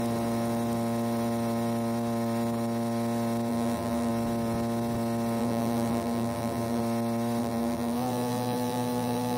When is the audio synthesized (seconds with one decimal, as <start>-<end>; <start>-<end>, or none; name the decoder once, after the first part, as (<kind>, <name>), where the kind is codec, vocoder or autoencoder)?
3.5-4.1 (vocoder, BigVGAN v2); 5.4-6.8; 7.4-9.4